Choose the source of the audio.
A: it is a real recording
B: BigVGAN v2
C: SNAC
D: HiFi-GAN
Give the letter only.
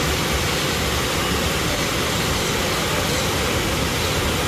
B